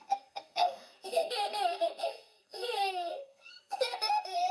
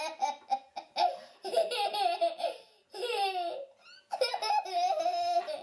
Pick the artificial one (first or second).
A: first